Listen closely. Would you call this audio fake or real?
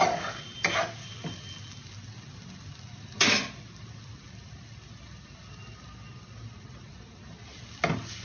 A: real